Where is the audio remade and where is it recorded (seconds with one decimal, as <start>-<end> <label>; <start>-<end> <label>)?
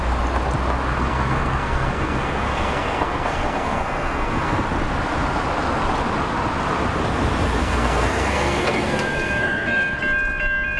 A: 0.0-0.9 recorded; 0.9-4.6 remade; 4.6-7.6 recorded; 7.6-10.0 remade; 10.0-10.8 recorded